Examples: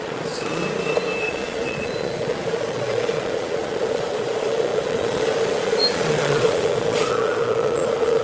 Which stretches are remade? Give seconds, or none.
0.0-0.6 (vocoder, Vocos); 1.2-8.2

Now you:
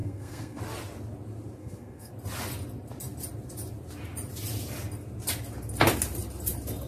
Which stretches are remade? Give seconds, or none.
0.0-0.6 (codec, SNAC); 1.6-2.1

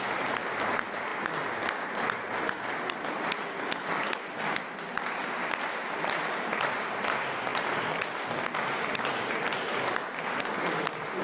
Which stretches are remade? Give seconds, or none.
none

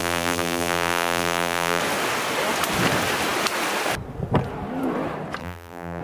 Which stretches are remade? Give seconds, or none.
0.0-1.8 (vocoder, BigVGAN v2); 5.4-6.0

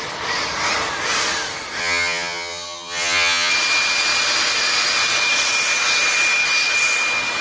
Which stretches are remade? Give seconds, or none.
1.8-3.5 (vocoder, HiFi-GAN)